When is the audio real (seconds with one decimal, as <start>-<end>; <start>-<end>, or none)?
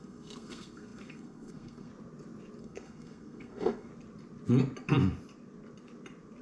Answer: 1.9-2.6; 3.9-6.4